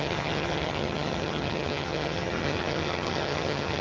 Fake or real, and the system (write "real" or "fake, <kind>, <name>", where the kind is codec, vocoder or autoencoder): fake, vocoder, HiFi-GAN